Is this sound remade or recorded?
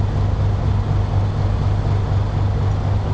recorded